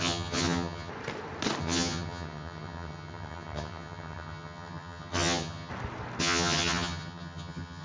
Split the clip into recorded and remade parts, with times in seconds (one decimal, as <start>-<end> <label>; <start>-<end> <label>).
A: 0.0-0.9 remade; 0.9-1.6 recorded; 1.6-5.7 remade; 5.7-6.2 recorded; 6.2-7.8 remade